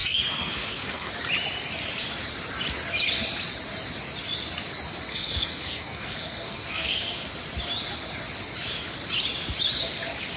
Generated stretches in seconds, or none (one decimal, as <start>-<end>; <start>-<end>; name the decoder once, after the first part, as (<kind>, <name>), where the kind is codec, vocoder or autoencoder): 0.0-1.1 (codec, SNAC); 5.1-7.3